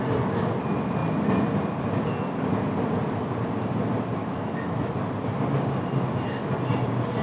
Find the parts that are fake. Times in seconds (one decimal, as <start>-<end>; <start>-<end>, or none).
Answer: 4.2-4.9